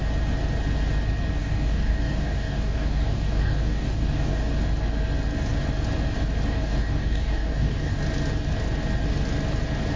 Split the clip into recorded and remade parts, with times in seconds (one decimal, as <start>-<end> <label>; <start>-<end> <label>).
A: 0.0-1.4 recorded; 1.4-4.5 remade; 4.5-6.5 recorded; 6.5-8.0 remade; 8.0-10.0 recorded